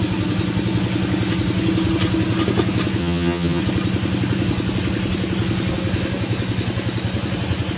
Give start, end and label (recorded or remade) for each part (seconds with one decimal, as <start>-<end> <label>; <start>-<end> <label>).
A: 0.0-3.0 recorded; 3.0-3.6 remade; 3.6-7.8 recorded